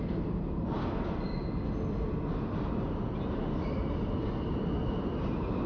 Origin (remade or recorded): recorded